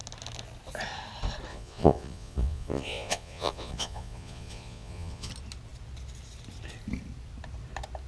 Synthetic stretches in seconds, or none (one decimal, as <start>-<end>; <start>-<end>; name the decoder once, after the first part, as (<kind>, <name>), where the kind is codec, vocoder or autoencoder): 1.5-5.3 (vocoder, Vocos)